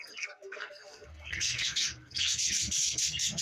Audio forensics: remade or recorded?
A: remade